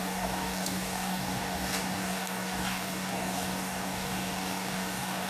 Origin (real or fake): fake